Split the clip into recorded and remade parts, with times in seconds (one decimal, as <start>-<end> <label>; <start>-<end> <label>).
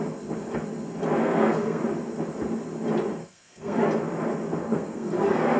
0.0-1.2 recorded; 1.2-1.8 remade; 1.8-3.2 recorded; 3.2-3.9 remade; 3.9-4.6 recorded; 4.6-5.6 remade